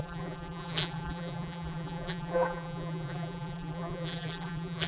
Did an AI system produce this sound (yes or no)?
yes